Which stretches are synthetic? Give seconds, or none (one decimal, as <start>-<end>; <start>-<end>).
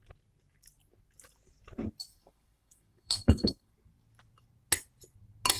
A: 2.1-3.7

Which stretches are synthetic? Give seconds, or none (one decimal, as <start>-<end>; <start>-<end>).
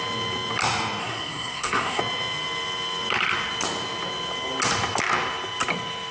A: 1.0-2.0